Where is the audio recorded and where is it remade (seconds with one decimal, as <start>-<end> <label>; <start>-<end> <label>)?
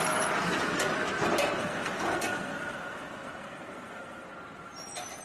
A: 0.0-1.6 recorded; 1.6-4.3 remade; 4.3-5.2 recorded